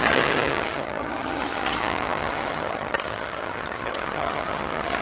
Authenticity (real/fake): fake